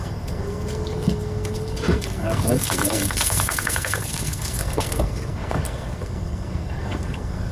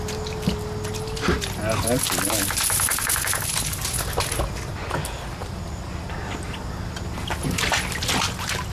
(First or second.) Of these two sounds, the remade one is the first